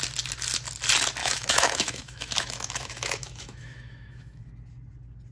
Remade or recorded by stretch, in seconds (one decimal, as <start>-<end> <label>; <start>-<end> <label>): 0.0-1.2 recorded; 1.2-4.4 remade; 4.4-5.3 recorded